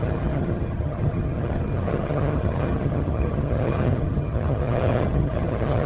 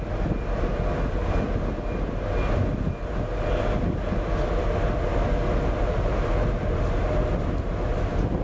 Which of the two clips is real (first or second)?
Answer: second